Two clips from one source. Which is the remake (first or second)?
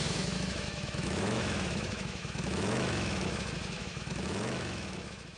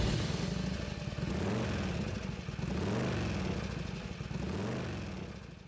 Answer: first